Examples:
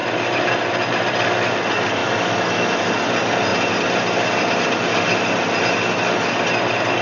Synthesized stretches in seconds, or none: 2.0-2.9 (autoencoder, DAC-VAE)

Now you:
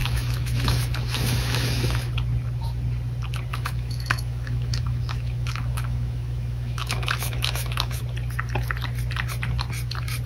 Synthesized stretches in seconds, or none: 0.0-2.1 (autoencoder, DAC-VAE); 3.5-8.0

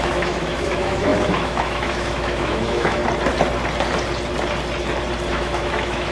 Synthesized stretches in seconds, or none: 0.0-3.0 (autoencoder, DAC-VAE); 5.3-6.1

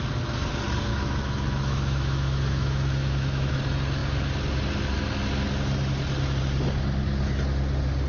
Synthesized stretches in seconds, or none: 0.9-3.5 (autoencoder, DAC-VAE)

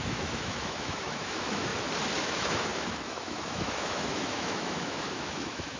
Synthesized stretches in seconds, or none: 0.0-1.7 (autoencoder, DAC-VAE); 2.2-5.8